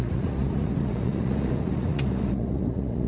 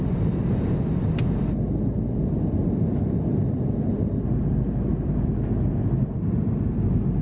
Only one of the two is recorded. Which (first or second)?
second